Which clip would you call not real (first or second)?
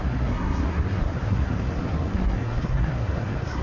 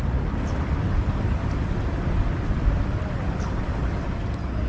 first